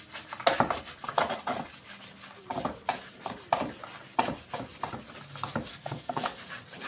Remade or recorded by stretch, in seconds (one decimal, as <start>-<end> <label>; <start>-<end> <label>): 0.0-5.7 recorded; 5.7-6.4 remade; 6.4-6.9 recorded